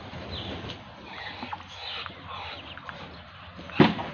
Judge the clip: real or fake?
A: real